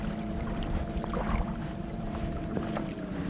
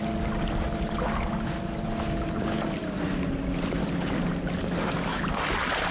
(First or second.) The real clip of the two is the second